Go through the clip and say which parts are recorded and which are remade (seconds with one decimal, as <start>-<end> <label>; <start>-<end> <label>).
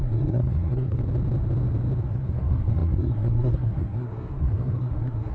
0.0-1.0 remade; 1.0-2.1 recorded; 2.1-5.3 remade